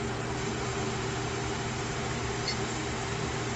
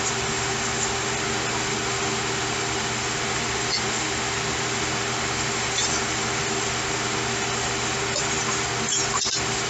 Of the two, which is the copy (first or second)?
first